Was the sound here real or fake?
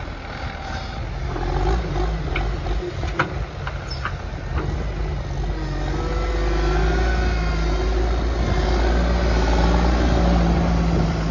real